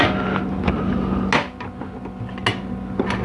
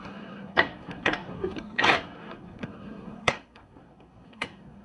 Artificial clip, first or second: second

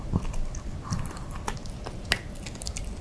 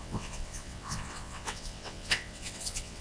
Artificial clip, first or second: second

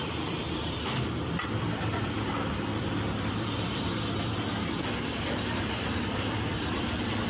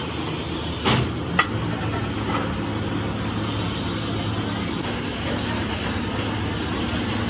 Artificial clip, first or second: first